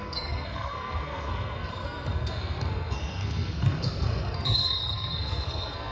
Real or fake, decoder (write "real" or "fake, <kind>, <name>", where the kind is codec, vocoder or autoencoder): fake, codec, SNAC